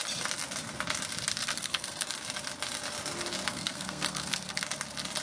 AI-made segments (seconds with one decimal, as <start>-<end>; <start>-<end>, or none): 1.4-2.1; 3.5-4.6